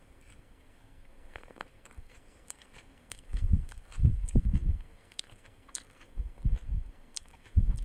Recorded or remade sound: remade